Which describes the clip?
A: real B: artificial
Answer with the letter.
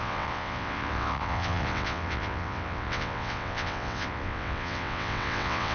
B